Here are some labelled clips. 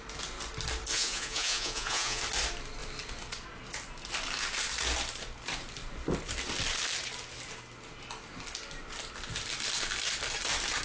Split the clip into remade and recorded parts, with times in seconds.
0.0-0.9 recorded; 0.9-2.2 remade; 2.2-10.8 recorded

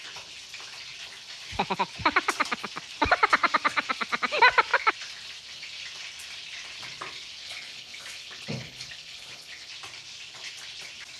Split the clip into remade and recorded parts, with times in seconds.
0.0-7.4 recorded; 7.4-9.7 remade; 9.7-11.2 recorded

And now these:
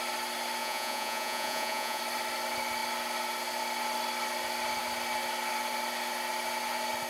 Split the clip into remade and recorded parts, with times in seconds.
0.0-0.6 recorded; 0.6-2.0 remade; 2.0-7.1 recorded

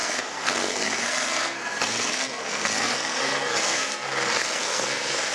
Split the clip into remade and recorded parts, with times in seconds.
0.0-5.3 remade

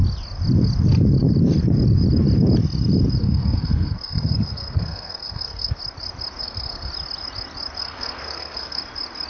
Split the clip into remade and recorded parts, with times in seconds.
0.0-3.2 recorded; 3.2-5.8 remade; 5.8-6.4 recorded; 6.4-6.9 remade; 6.9-7.8 recorded; 7.8-8.8 remade; 8.8-9.3 recorded

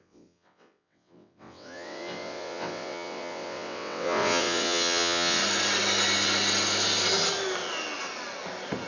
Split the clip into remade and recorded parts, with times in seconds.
0.0-5.4 remade; 5.4-8.9 recorded

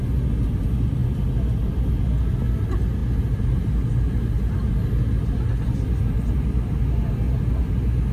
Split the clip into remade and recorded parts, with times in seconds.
0.0-8.1 recorded

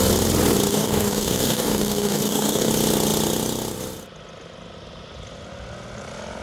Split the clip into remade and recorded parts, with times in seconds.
0.0-0.7 recorded; 0.7-2.7 remade; 2.7-6.4 recorded